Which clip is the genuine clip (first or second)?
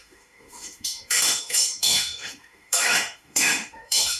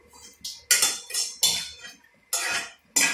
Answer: second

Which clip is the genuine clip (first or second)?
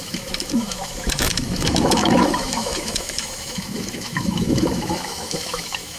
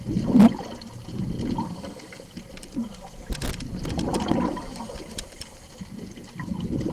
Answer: second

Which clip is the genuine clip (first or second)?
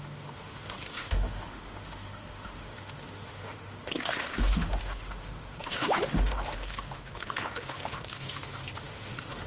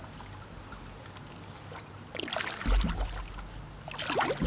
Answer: second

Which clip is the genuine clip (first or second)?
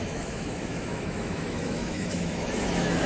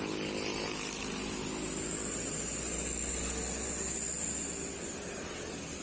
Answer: second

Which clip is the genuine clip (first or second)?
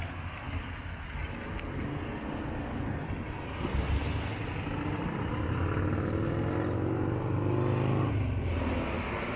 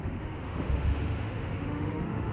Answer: first